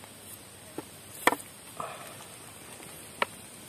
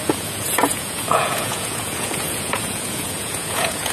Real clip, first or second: first